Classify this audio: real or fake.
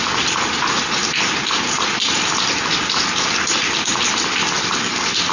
real